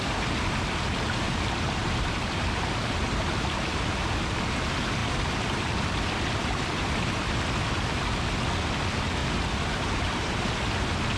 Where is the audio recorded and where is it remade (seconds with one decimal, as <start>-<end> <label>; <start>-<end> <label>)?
0.0-1.8 recorded; 1.8-2.7 remade; 2.7-9.2 recorded; 9.2-10.5 remade; 10.5-11.2 recorded